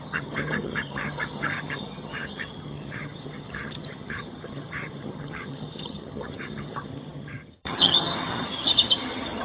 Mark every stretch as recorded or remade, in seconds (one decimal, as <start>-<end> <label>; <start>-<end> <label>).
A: 0.0-9.4 remade